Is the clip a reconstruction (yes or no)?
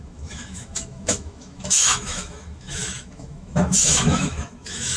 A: yes